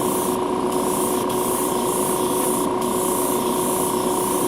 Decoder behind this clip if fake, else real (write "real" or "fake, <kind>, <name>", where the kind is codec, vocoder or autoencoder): real